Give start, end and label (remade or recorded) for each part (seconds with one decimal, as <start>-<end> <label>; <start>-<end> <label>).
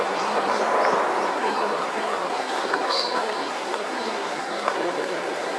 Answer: 0.0-0.6 remade; 0.6-1.3 recorded; 1.3-5.6 remade